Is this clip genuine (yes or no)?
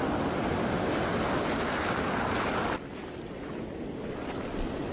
yes